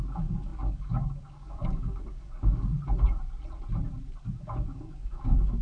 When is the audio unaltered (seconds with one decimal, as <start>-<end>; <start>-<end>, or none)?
2.7-4.2